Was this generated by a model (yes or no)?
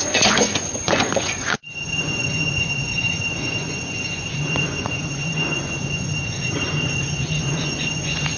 yes